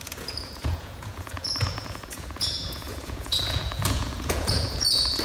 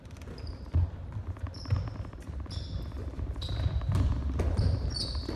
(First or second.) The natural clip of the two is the second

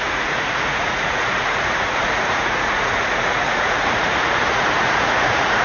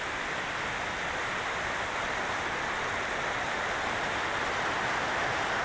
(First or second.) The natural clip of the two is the second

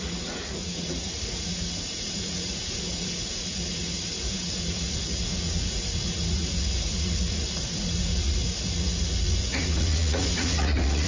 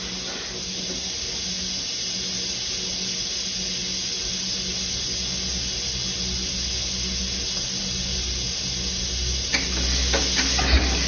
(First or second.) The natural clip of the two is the second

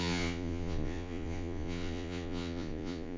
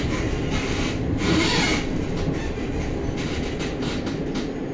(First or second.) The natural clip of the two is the second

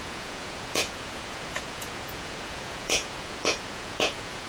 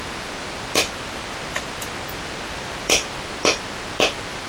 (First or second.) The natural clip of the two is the second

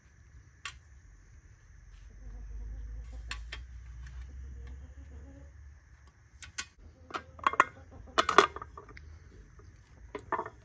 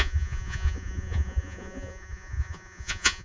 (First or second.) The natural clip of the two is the first